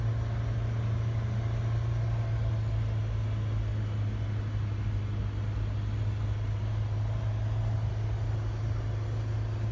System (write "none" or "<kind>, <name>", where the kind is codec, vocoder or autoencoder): none